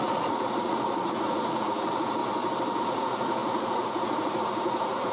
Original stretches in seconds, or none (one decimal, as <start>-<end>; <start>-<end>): 2.2-2.8